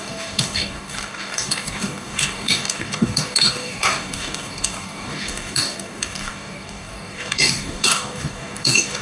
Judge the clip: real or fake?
fake